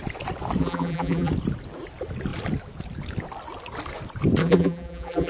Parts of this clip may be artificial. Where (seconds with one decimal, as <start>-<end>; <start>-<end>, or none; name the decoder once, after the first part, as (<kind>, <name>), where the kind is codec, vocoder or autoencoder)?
0.6-1.3 (vocoder, BigVGAN v2); 4.4-5.3